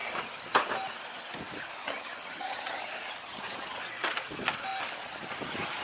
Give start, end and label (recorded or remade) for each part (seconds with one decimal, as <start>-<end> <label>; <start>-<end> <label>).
0.0-1.8 recorded; 1.8-2.8 remade; 2.8-3.2 recorded; 3.2-3.8 remade; 3.8-5.8 recorded